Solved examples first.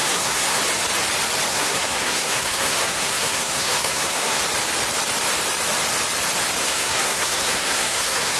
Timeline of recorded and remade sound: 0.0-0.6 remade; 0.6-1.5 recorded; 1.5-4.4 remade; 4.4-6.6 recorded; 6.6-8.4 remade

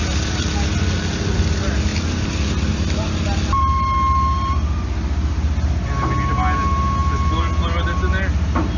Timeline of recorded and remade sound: 0.0-8.8 recorded

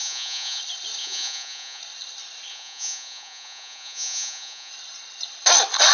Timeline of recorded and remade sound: 0.0-0.6 remade; 0.6-1.0 recorded; 1.0-1.8 remade; 1.8-2.5 recorded; 2.5-4.7 remade; 4.7-5.9 recorded

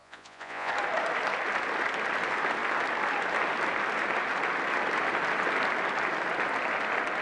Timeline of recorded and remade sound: 0.0-0.7 remade; 0.7-7.2 recorded

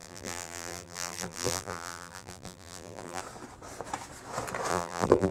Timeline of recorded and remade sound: 0.0-3.2 remade; 3.2-4.7 recorded; 4.7-5.3 remade